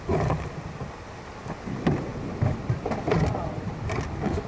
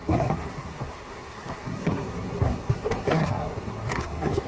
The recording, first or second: first